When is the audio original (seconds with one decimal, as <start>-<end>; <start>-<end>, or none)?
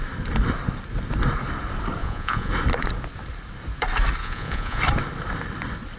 0.0-2.0; 2.5-4.2; 4.8-6.0